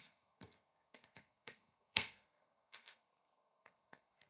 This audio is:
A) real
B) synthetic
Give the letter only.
B